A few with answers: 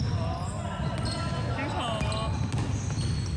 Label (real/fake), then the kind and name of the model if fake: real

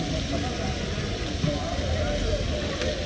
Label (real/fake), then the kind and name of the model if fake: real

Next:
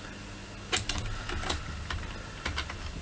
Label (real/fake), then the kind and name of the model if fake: real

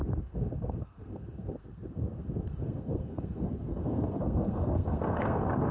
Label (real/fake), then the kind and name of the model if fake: fake, codec, SNAC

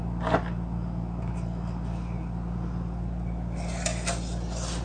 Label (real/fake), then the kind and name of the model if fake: real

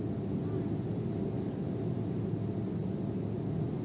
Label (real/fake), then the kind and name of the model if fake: real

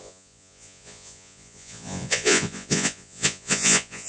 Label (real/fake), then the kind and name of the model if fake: fake, vocoder, Vocos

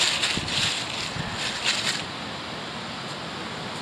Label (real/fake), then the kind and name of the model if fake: real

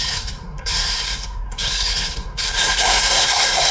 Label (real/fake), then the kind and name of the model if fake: fake, codec, SNAC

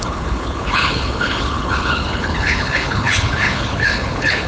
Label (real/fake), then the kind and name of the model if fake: fake, codec, HILCodec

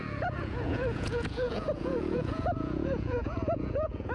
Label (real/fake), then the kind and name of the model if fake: fake, vocoder, Vocos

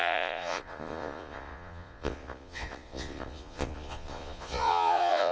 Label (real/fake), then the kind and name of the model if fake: fake, vocoder, Vocos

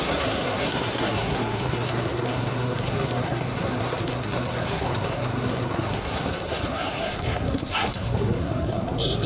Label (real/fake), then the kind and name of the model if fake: fake, codec, SNAC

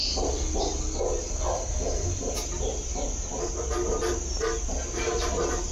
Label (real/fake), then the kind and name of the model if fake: real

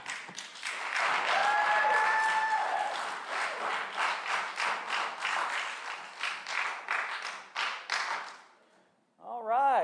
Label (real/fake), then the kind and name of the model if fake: real